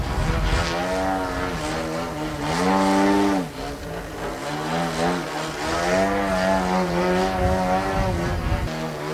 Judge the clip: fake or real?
real